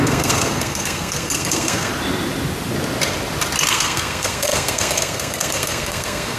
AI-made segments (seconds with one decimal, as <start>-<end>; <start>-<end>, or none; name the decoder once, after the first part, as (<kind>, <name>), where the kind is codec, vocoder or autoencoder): 0.0-1.9 (codec, SNAC); 3.7-6.4